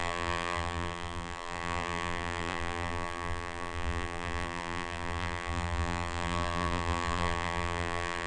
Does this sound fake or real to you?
fake